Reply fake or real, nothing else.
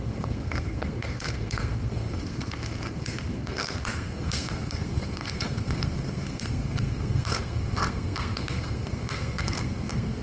fake